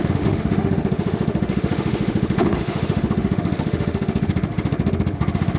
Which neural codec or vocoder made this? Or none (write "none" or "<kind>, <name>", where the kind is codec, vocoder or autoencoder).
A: autoencoder, DAC-VAE